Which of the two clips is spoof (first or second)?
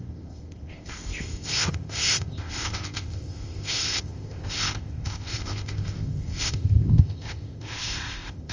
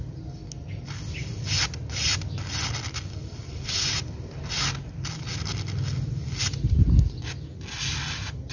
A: first